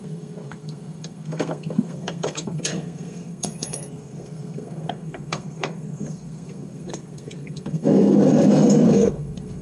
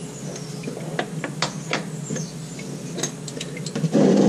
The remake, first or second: first